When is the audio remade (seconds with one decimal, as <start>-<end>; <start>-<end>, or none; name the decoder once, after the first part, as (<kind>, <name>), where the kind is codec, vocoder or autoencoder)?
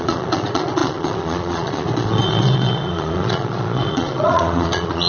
0.0-5.1 (vocoder, Vocos)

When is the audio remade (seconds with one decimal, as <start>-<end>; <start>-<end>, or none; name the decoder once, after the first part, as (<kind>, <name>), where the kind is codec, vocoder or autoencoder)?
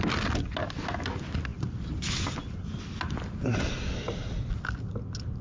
none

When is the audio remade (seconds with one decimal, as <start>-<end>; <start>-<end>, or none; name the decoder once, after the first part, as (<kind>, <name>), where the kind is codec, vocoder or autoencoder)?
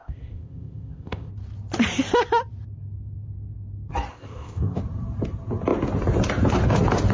0.0-1.3 (codec, ZipCodec); 4.1-4.8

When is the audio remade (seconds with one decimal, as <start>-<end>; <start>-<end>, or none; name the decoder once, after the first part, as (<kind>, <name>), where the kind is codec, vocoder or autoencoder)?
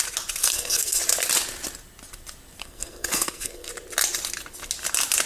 0.4-1.0 (codec, SNAC); 2.6-3.7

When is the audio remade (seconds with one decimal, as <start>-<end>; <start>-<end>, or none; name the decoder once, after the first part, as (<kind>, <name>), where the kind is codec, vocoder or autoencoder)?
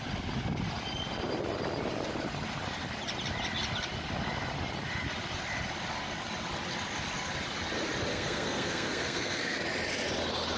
8.1-9.6 (codec, SNAC)